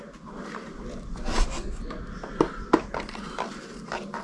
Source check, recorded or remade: recorded